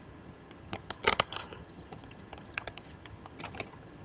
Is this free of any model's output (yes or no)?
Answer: no